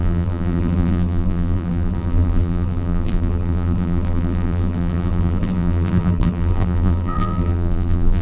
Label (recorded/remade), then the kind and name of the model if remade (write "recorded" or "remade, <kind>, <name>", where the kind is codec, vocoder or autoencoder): remade, vocoder, BigVGAN v2